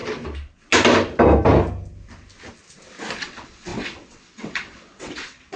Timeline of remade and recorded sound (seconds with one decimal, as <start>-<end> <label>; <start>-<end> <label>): 0.0-3.2 recorded; 3.2-5.6 remade

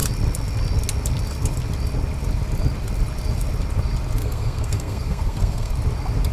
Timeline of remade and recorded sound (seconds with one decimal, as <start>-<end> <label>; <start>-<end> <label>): 0.0-4.2 recorded; 4.2-5.7 remade; 5.7-6.3 recorded